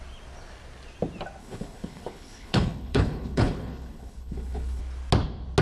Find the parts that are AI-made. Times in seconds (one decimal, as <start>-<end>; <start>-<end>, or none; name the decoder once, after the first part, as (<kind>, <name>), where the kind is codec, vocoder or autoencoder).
1.4-4.8 (codec, HILCodec)